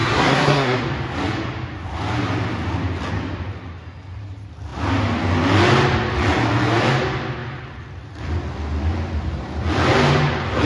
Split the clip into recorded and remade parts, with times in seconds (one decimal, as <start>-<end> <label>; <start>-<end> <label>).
0.0-0.8 remade; 0.8-10.7 recorded